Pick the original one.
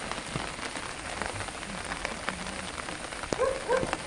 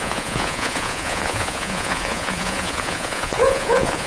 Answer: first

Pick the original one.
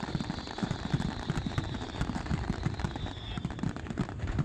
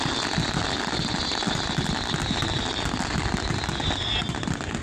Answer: second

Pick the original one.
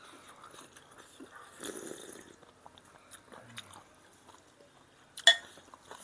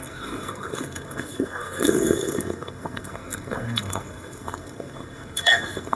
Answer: first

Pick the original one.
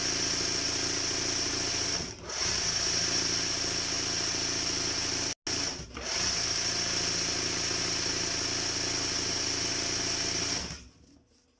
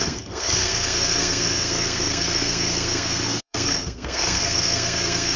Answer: first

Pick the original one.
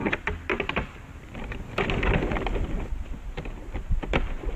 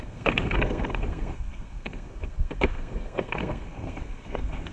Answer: first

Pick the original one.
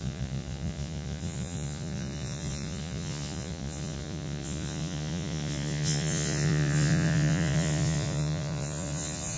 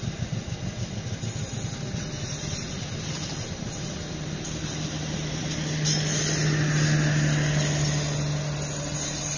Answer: second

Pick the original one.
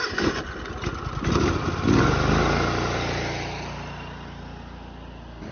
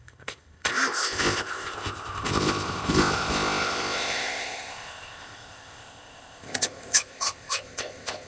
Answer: first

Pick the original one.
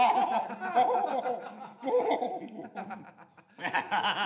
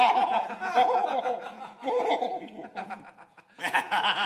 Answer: first